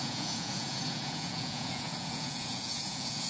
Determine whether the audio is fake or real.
fake